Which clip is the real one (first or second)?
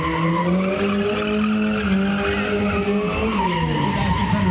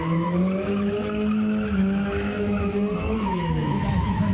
first